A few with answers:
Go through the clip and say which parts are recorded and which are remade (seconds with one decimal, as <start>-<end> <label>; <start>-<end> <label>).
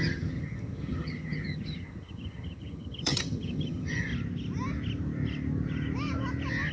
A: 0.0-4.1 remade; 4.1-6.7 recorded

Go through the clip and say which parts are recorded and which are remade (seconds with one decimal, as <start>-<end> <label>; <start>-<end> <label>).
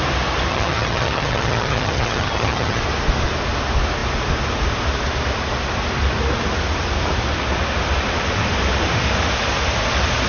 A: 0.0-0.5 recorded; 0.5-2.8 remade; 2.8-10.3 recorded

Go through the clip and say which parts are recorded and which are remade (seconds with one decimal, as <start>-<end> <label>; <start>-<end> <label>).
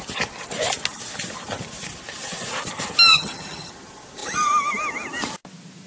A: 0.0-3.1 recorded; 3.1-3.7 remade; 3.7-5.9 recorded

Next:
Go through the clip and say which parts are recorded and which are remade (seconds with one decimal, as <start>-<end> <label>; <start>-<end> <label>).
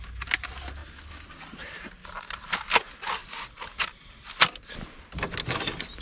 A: 0.0-6.0 recorded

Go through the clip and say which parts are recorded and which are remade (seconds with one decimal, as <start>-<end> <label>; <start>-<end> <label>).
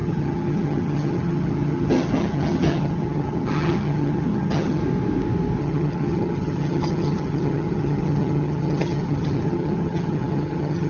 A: 0.0-4.8 remade; 4.8-5.6 recorded; 5.6-10.9 remade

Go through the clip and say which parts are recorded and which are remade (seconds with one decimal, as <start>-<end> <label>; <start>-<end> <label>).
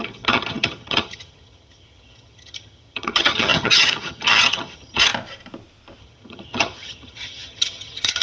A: 0.0-5.1 remade; 5.1-6.0 recorded; 6.0-8.2 remade